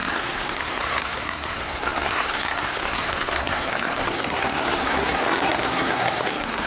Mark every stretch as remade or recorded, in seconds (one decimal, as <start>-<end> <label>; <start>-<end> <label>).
0.0-6.7 remade